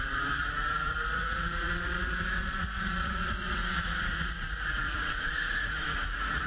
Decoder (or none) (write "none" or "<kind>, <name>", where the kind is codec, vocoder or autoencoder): vocoder, Vocos